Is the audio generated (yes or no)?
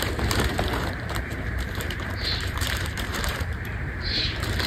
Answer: yes